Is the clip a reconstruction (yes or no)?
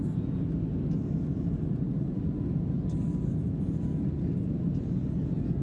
no